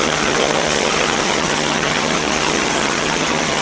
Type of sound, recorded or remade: remade